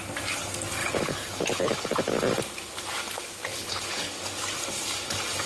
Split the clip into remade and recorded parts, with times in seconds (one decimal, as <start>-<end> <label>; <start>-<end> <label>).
0.0-0.8 recorded; 0.8-1.7 remade; 1.7-3.4 recorded; 3.4-4.1 remade; 4.1-5.5 recorded